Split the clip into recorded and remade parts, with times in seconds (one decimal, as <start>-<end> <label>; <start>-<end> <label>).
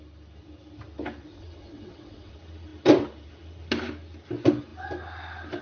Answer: 0.0-1.3 recorded; 1.3-2.3 remade; 2.3-5.6 recorded